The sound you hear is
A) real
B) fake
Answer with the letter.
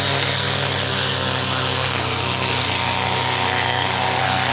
B